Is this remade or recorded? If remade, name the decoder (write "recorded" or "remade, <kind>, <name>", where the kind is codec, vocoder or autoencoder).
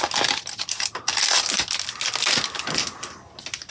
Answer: recorded